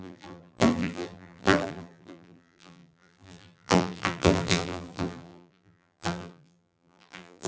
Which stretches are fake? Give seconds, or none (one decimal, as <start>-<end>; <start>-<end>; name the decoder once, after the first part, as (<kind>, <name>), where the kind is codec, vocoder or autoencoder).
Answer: 0.0-7.5 (vocoder, BigVGAN v2)